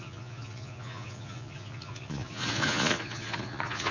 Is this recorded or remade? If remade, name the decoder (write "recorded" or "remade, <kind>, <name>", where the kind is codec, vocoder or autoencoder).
remade, vocoder, Vocos